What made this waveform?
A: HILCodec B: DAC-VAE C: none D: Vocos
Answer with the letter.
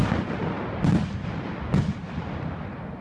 C